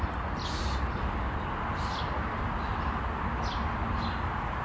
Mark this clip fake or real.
real